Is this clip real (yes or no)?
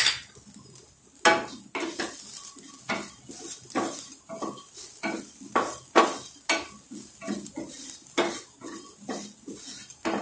yes